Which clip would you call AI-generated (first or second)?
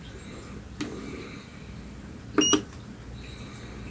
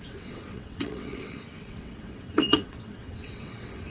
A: second